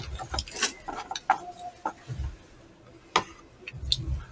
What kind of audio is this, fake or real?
real